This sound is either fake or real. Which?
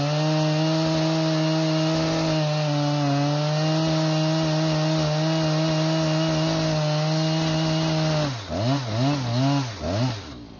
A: real